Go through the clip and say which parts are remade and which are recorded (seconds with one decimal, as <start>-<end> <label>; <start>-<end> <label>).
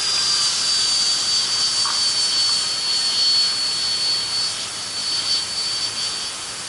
0.0-5.0 recorded; 5.0-5.9 remade; 5.9-6.7 recorded